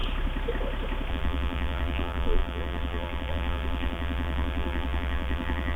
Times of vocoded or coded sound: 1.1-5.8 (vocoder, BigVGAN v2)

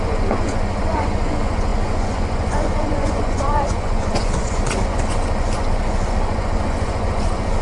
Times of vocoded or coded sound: 0.0-7.6 (vocoder, Vocos)

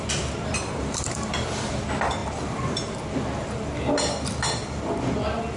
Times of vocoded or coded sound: 0.5-1.6 (vocoder, BigVGAN v2); 2.2-2.9